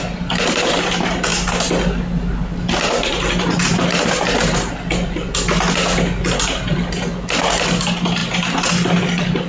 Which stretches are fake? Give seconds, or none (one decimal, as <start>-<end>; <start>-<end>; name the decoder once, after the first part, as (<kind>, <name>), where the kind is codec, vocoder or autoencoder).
none